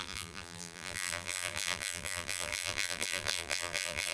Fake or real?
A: fake